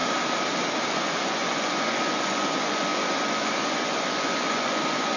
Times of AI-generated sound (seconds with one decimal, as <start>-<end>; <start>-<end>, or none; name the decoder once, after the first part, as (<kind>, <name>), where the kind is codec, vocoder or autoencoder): 0.9-5.2 (vocoder, Vocos)